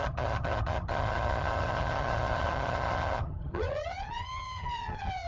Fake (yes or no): yes